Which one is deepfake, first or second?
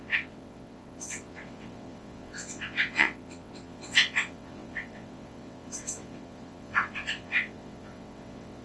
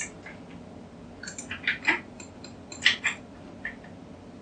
first